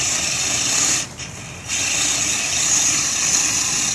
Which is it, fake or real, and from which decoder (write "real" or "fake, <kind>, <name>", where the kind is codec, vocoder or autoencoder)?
real